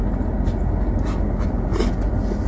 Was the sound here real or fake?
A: real